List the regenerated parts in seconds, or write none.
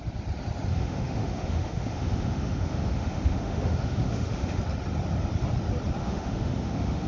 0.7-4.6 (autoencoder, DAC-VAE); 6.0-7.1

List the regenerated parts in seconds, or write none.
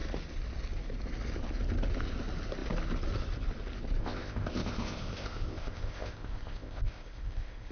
4.0-7.7 (codec, ZipCodec)